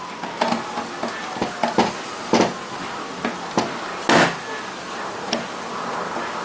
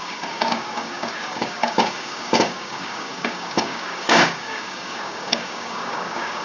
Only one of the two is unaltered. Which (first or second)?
first